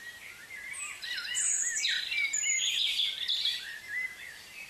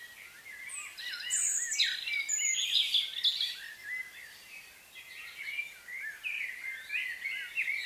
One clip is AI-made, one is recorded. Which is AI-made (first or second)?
first